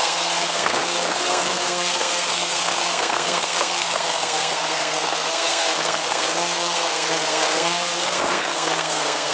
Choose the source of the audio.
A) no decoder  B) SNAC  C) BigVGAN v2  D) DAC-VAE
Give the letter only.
B